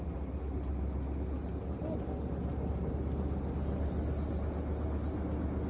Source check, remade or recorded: recorded